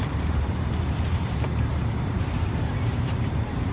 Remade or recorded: remade